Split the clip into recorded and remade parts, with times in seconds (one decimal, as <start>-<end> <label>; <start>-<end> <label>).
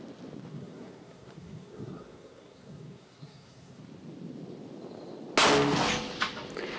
0.0-0.5 recorded; 0.5-3.8 remade; 3.8-6.8 recorded